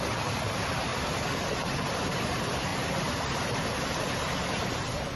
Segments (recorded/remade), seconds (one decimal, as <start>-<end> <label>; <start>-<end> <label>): 0.0-0.9 remade; 0.9-1.6 recorded; 1.6-2.7 remade; 2.7-4.4 recorded; 4.4-5.2 remade